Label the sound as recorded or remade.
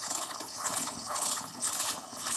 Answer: remade